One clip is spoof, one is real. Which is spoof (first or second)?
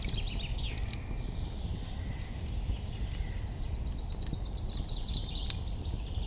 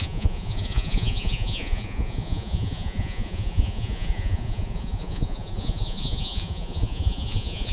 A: second